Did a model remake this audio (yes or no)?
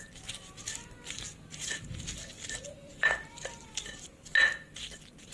no